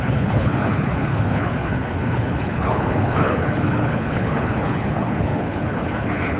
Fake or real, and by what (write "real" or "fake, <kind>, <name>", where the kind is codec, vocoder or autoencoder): fake, codec, HILCodec